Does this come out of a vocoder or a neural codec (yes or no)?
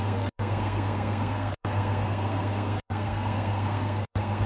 yes